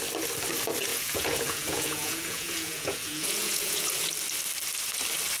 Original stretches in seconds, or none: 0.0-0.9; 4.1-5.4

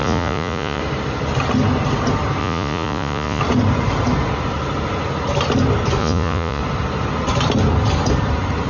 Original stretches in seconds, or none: 0.8-2.4; 3.4-6.0; 6.6-8.7

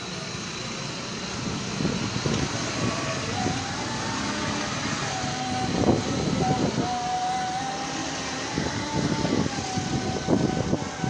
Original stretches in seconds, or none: 0.0-11.1

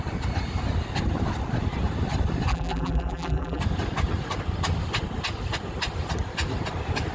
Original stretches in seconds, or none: 0.0-2.5; 3.6-7.1

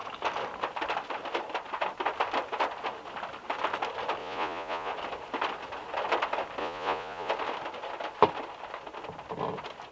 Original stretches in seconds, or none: 0.0-4.2; 4.9-6.6; 7.3-9.9

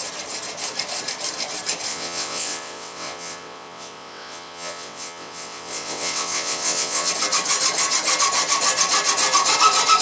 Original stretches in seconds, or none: 0.0-1.9; 7.1-10.0

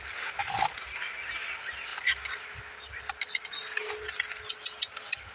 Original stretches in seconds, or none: 0.0-5.3